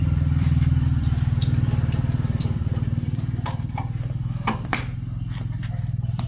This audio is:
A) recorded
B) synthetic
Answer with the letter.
B